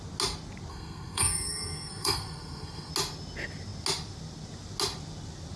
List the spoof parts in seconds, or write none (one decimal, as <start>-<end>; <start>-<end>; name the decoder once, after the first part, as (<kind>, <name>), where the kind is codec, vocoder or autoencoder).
0.7-2.9 (codec, SNAC)